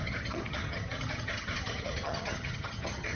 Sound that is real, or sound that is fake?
fake